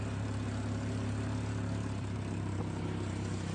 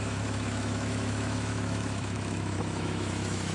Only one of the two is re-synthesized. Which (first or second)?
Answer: second